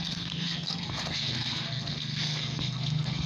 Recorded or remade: remade